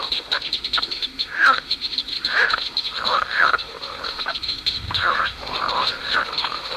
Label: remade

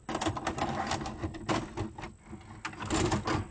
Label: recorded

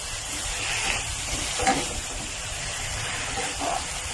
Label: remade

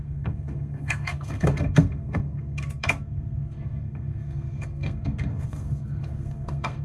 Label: remade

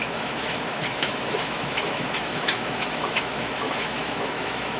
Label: remade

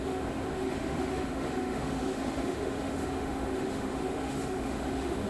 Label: remade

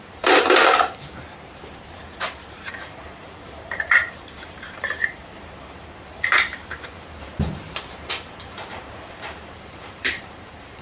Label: remade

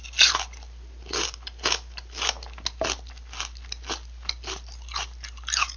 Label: recorded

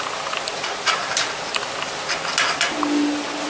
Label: recorded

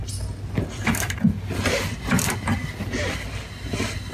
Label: recorded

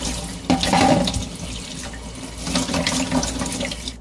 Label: recorded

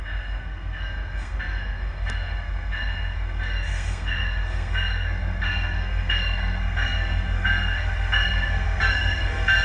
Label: remade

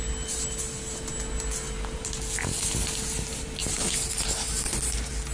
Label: recorded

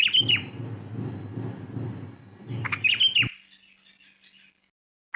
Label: recorded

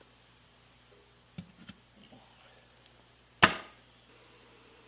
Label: recorded